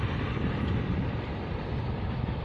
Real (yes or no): yes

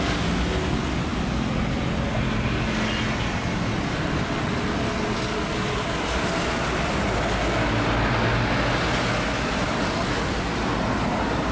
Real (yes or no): yes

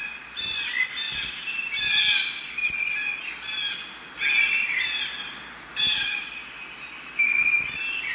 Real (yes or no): yes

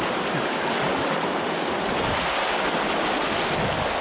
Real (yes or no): yes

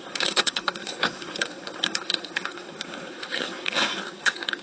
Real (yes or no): no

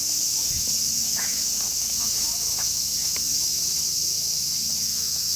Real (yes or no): no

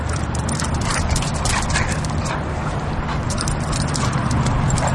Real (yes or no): yes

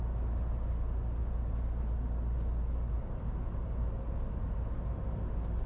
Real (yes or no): yes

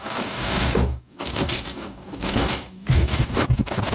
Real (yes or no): no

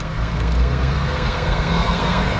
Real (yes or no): no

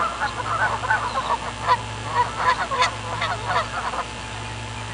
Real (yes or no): yes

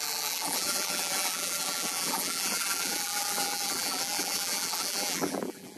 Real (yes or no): no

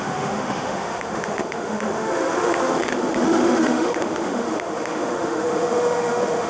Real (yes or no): no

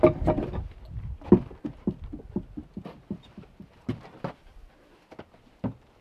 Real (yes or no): yes